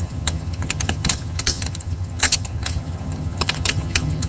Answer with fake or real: fake